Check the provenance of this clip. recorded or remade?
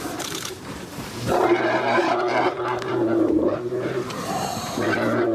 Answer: remade